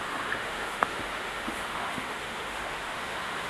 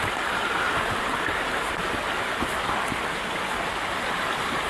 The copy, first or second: first